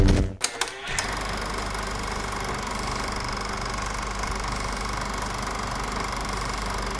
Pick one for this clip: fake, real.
real